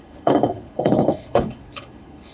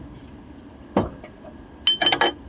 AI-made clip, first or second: first